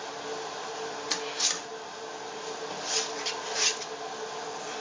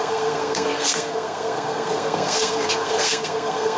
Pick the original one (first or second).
first